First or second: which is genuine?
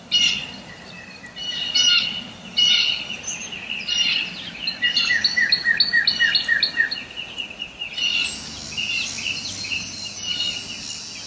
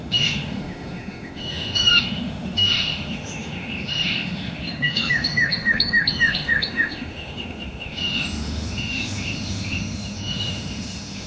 first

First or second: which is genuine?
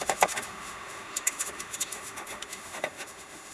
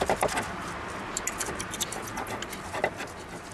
second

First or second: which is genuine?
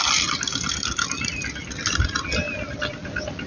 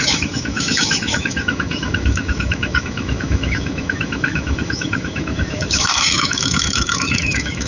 first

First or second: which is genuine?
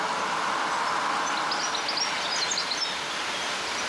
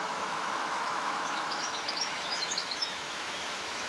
first